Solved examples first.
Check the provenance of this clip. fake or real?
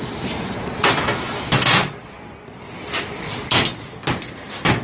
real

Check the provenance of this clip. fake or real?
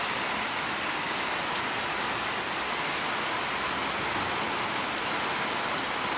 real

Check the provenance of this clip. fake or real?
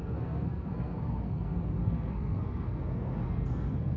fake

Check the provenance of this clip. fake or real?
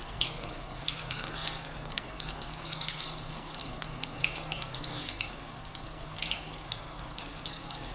fake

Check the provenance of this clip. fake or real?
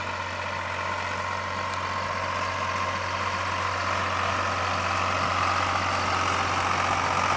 real